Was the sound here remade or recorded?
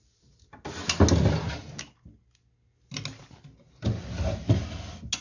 recorded